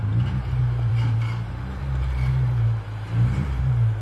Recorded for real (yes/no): no